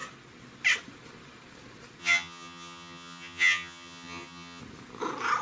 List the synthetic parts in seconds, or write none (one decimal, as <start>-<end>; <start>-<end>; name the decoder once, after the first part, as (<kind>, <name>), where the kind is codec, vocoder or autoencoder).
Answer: 2.0-4.6 (vocoder, HiFi-GAN)